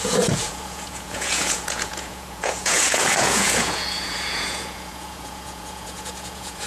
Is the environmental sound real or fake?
fake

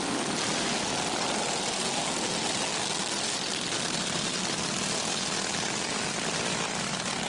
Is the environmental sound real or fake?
real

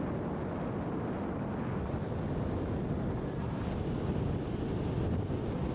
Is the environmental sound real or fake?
real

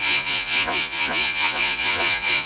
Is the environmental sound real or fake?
fake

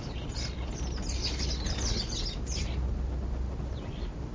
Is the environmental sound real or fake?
real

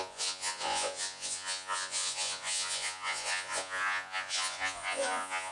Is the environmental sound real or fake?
fake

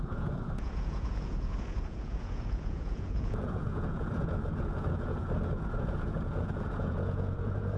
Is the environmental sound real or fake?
fake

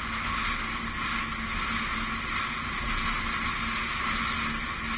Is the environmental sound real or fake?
real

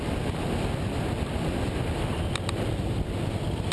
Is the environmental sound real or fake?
real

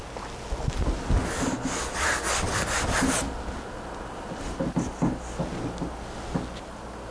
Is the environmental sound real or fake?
real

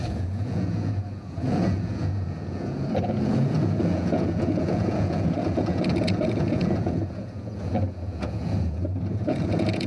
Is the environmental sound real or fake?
fake